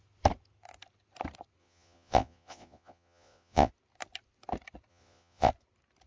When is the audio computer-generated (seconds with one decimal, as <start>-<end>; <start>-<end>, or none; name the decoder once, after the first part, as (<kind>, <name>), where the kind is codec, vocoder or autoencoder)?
1.6-3.7 (vocoder, Vocos); 4.9-5.5